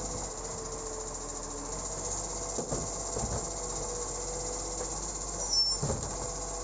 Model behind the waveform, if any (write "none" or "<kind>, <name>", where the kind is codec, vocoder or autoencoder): none